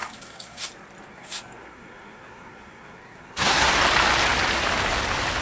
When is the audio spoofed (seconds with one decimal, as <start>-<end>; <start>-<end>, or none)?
0.0-0.7; 1.1-3.7